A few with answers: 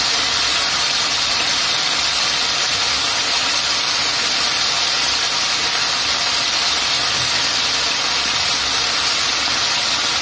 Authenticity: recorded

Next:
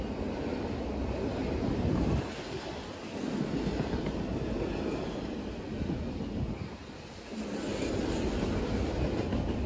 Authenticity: recorded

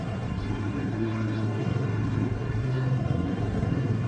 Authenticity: remade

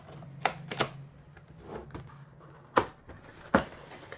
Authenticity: recorded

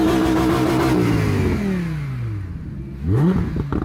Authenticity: recorded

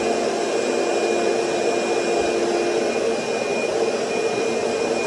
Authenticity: recorded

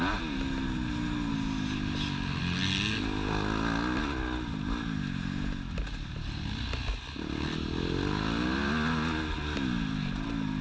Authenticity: recorded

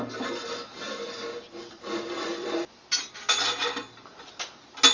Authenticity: recorded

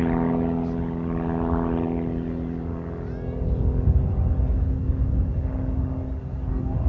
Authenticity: recorded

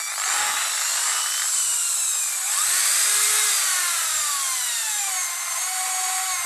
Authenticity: recorded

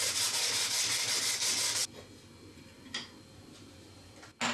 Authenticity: recorded